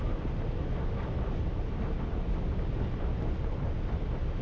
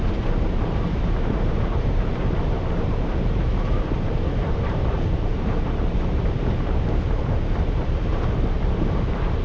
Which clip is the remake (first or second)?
second